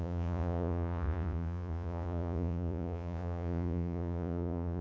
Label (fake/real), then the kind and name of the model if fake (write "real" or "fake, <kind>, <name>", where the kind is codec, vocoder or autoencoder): fake, vocoder, Vocos